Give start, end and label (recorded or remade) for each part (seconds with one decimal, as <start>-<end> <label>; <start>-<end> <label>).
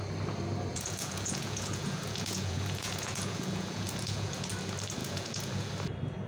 0.0-0.7 recorded; 0.7-4.5 remade; 4.5-5.0 recorded; 5.0-5.7 remade; 5.7-6.3 recorded